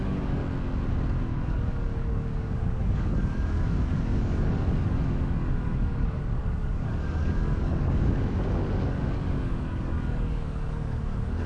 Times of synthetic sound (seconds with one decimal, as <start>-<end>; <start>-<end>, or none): 0.0-0.4; 1.2-11.5